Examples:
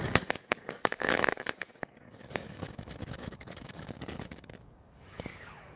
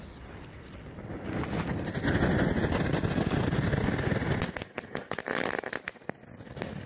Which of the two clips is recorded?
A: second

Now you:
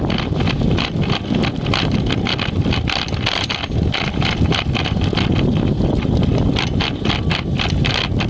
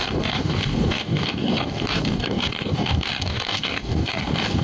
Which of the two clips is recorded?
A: first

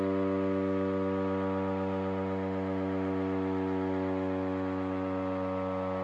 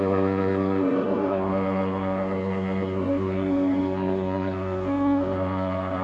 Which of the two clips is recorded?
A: first